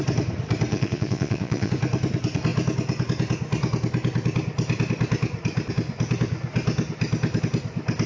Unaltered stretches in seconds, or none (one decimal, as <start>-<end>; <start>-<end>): 0.0-0.7; 1.7-8.1